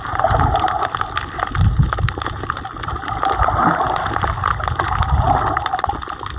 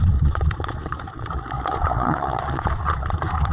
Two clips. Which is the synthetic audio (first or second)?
second